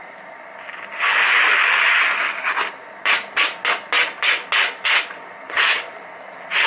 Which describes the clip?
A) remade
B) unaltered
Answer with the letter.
B